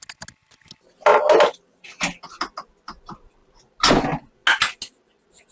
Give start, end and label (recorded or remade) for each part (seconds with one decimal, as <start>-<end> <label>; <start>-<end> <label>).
0.0-5.5 recorded